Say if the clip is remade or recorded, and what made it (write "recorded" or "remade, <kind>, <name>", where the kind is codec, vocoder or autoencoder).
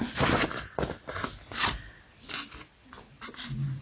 recorded